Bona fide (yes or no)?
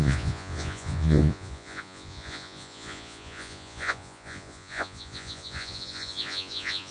no